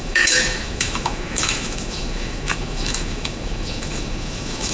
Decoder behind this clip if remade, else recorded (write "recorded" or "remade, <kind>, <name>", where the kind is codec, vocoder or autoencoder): remade, autoencoder, DAC-VAE